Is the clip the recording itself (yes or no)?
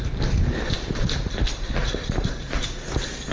yes